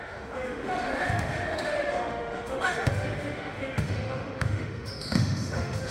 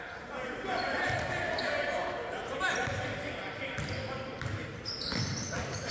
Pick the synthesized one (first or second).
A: first